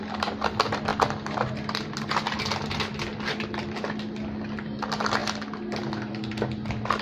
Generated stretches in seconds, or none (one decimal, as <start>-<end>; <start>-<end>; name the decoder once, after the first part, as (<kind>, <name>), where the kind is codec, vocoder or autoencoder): none